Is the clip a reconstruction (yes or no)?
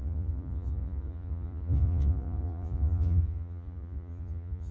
yes